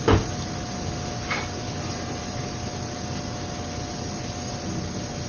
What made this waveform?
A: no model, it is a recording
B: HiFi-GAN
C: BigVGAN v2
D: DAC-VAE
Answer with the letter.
A